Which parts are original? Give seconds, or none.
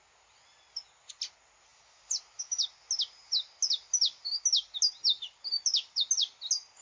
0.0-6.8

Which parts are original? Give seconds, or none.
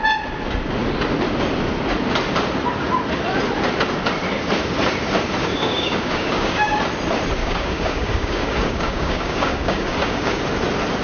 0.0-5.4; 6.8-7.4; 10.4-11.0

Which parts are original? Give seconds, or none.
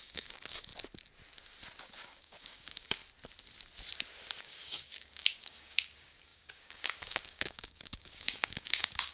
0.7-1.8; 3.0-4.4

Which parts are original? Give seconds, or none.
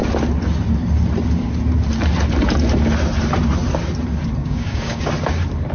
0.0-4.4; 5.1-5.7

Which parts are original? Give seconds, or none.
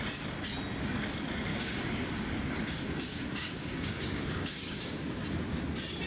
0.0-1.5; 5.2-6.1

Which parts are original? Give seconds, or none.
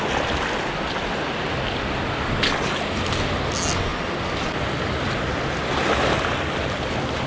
0.0-7.3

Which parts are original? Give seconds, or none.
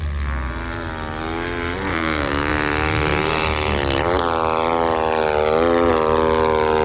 0.0-1.9; 2.5-6.8